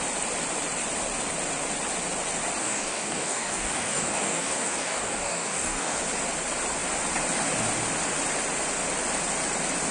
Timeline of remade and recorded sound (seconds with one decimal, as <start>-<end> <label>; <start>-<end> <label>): 0.0-2.6 recorded; 2.6-6.0 remade; 6.0-9.9 recorded